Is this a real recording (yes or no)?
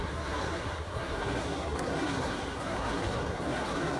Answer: no